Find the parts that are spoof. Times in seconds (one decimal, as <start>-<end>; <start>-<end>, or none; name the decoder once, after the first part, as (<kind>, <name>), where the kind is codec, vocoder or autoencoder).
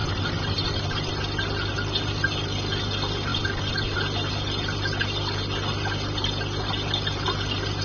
0.0-1.1 (vocoder, BigVGAN v2); 3.3-4.3